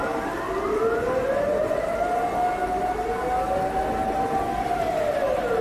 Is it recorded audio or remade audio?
recorded